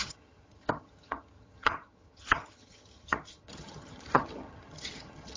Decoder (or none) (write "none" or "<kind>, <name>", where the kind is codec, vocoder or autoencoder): vocoder, HiFi-GAN